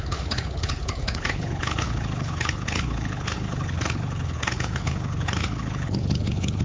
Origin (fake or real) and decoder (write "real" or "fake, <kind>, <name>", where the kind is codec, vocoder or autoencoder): fake, codec, HILCodec